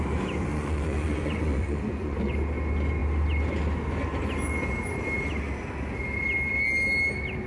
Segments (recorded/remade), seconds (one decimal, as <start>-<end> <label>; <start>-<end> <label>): 0.0-0.5 recorded; 0.5-2.3 remade; 2.3-7.5 recorded

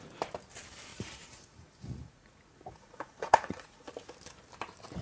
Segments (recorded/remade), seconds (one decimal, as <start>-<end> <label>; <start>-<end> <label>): 0.0-0.9 recorded; 0.9-3.9 remade; 3.9-5.0 recorded